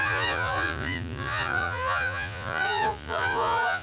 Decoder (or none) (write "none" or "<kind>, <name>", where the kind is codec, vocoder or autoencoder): vocoder, Vocos